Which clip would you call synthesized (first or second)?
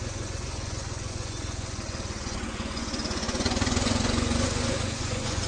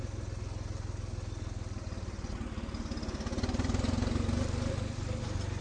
first